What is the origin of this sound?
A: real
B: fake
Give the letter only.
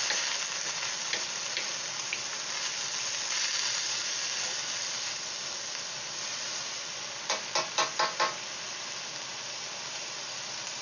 A